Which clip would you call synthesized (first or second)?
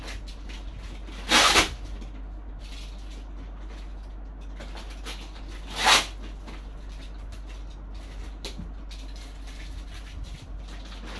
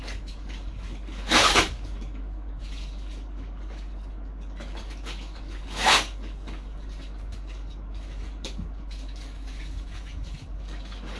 second